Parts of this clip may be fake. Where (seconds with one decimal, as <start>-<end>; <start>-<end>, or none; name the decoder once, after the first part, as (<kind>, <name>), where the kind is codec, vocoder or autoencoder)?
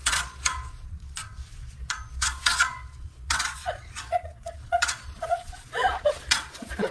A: 0.0-6.9 (vocoder, Vocos)